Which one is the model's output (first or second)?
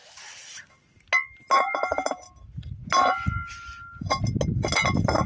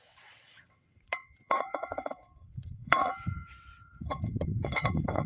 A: second